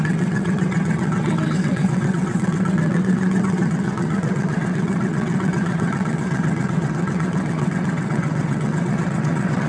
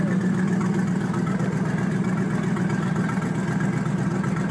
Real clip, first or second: second